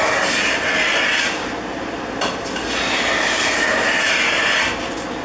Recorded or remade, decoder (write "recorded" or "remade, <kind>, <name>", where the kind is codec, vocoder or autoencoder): recorded